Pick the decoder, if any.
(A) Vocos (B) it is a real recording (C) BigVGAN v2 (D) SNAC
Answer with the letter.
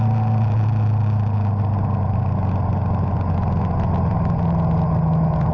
B